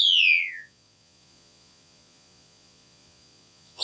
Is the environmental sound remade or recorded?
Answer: remade